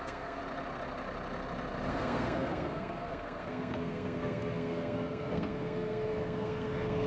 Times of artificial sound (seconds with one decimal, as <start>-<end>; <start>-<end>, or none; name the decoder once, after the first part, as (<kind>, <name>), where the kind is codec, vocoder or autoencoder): 0.0-0.4 (codec, SNAC); 1.9-7.1